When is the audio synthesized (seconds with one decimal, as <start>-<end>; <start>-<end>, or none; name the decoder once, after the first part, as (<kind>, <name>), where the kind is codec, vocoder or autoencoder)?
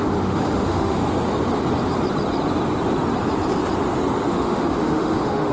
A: 0.0-1.0 (autoencoder, DAC-VAE); 4.3-5.5